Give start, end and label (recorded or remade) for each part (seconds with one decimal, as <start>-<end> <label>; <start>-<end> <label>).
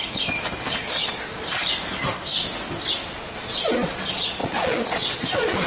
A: 0.0-0.7 recorded; 0.7-1.3 remade; 1.3-3.2 recorded; 3.2-5.7 remade